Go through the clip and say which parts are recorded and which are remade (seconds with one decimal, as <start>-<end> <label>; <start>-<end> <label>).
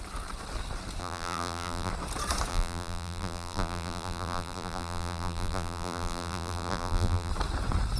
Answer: 0.0-1.0 recorded; 1.0-1.9 remade; 1.9-2.5 recorded; 2.5-7.3 remade; 7.3-8.0 recorded